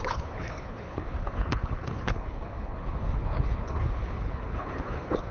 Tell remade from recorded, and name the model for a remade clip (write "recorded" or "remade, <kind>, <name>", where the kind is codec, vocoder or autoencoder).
remade, codec, HILCodec